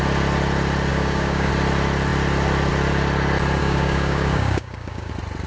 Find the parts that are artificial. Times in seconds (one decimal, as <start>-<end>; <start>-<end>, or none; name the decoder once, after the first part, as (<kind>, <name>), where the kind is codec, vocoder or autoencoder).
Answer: 0.9-1.5 (codec, DAC); 3.6-5.1